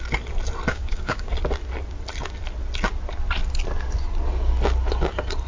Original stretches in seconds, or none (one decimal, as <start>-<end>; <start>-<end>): 0.0-0.7; 1.3-5.5